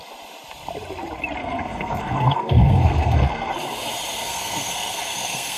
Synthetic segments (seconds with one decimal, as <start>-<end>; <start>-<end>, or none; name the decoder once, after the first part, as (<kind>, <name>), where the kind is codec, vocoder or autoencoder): 1.4-3.5 (codec, SNAC); 4.2-5.6